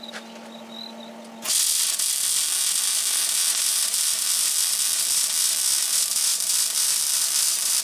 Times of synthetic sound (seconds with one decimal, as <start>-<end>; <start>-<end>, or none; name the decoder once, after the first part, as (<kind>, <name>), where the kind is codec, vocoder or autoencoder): 4.4-5.4 (vocoder, BigVGAN v2); 6.3-7.8